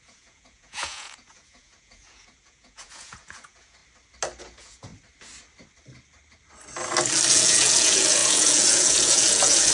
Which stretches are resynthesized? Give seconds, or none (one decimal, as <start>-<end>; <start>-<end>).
0.0-3.8; 4.4-4.9; 7.3-9.7